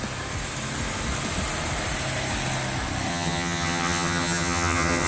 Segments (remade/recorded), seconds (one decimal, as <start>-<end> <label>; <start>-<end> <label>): 0.0-3.1 recorded; 3.1-5.1 remade